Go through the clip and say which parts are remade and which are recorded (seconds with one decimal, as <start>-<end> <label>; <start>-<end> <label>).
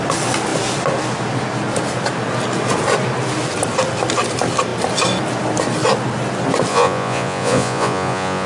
0.0-6.7 recorded; 6.7-8.5 remade